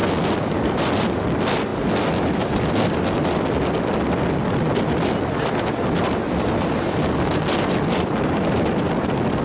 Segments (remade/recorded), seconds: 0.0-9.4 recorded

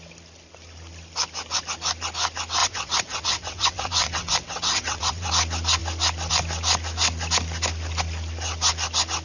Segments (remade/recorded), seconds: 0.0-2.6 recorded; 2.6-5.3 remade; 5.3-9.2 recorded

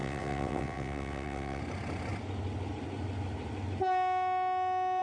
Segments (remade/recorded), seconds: 0.0-1.6 remade; 1.6-5.0 recorded

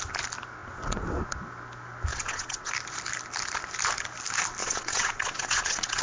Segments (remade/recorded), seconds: 0.0-2.1 recorded; 2.1-2.7 remade; 2.7-4.6 recorded; 4.6-6.0 remade